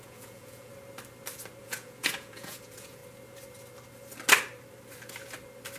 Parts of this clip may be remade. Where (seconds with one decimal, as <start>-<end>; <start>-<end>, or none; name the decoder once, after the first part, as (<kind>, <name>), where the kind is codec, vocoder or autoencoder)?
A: 0.0-0.7 (vocoder, Vocos); 1.6-3.0